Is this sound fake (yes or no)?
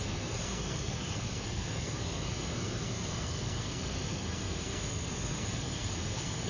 yes